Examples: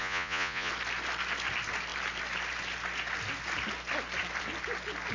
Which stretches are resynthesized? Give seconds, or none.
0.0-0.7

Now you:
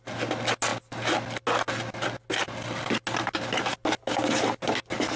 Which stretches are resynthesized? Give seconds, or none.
none

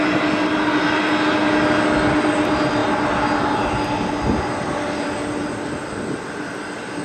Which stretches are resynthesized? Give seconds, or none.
none

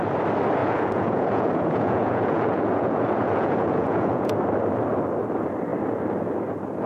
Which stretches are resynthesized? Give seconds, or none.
0.6-4.4

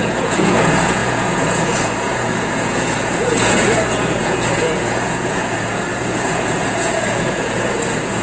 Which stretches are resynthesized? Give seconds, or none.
0.0-8.2

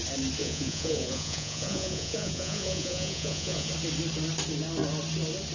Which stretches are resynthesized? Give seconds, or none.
0.4-3.7